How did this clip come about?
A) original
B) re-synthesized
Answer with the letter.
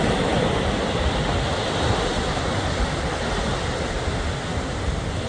A